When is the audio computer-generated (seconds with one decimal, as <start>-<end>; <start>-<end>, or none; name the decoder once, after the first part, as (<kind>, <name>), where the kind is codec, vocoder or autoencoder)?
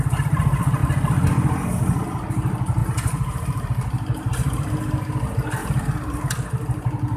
2.8-4.3 (vocoder, BigVGAN v2); 5.6-6.2